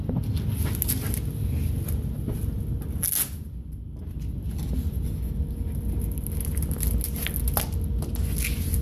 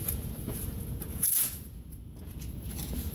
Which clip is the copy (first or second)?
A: second